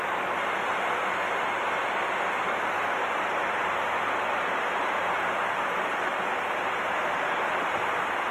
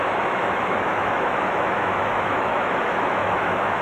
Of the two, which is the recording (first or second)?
first